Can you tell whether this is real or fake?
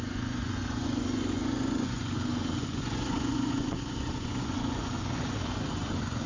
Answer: fake